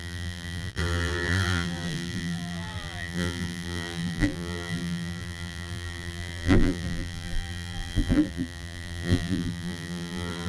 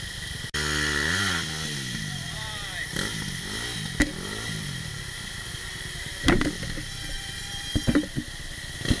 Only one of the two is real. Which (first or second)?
second